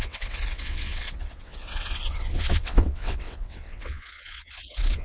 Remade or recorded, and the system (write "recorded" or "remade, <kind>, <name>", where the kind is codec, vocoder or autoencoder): remade, vocoder, WaveNeXt